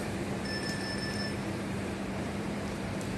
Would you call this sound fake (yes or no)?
yes